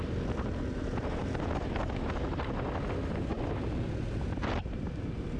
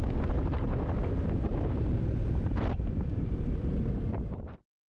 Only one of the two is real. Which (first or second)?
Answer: first